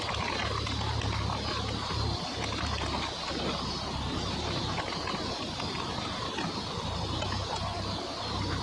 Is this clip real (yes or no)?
yes